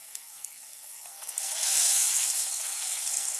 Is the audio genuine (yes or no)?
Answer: no